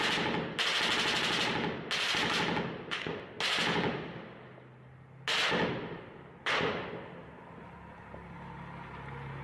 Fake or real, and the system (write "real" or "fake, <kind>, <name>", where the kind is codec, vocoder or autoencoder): real